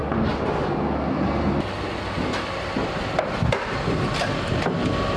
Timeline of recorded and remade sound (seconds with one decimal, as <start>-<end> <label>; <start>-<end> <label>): 0.0-5.2 recorded